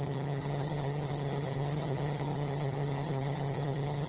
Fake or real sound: fake